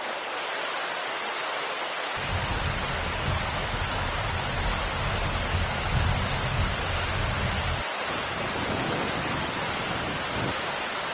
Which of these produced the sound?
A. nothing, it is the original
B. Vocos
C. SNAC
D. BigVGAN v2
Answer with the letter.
A